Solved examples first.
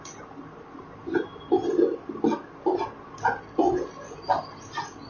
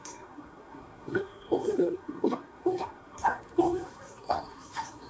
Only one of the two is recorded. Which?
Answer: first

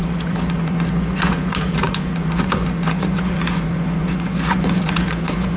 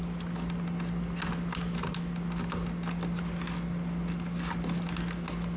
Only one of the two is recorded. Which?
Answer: second